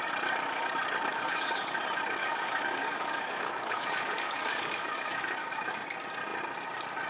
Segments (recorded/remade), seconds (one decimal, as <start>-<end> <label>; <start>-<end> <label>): 0.0-1.1 recorded; 1.1-1.8 remade; 1.8-2.2 recorded; 2.2-5.5 remade; 5.5-7.1 recorded